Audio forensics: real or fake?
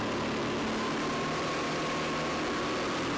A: real